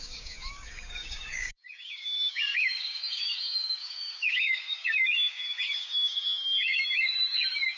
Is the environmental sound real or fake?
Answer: fake